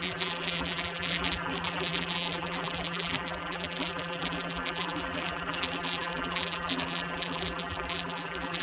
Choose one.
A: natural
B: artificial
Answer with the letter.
B